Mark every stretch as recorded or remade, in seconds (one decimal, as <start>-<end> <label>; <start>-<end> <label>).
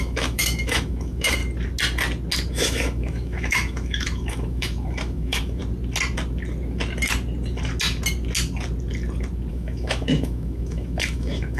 0.0-1.4 remade; 1.4-2.5 recorded; 2.5-5.6 remade; 5.6-9.5 recorded; 9.5-11.6 remade